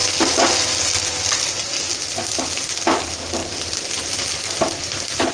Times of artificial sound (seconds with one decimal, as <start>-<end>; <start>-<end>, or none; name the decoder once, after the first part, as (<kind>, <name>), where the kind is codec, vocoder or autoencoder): none